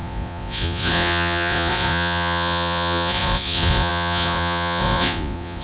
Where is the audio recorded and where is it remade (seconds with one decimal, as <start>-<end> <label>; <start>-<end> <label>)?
0.0-5.6 remade